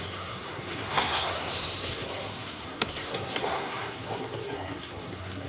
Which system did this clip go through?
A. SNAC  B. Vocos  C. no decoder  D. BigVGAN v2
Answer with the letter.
A